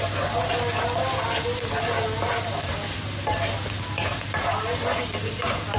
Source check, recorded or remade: recorded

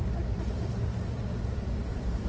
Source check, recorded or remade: remade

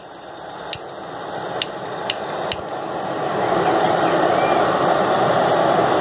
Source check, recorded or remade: recorded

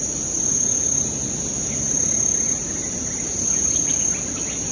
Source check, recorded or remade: recorded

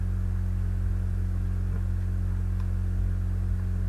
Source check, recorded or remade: recorded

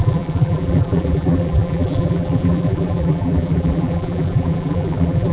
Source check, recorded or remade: remade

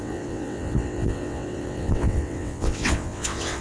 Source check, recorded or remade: remade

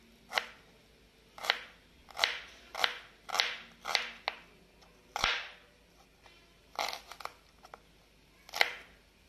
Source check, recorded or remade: recorded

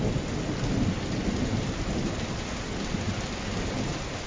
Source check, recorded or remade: recorded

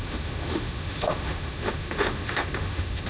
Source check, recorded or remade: remade